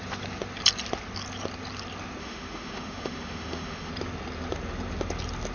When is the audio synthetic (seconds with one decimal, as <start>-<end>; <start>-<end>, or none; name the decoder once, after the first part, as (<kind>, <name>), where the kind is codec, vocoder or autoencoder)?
2.2-3.9 (autoencoder, DAC-VAE)